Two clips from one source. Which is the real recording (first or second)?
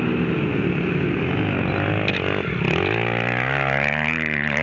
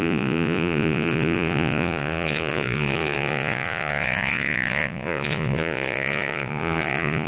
first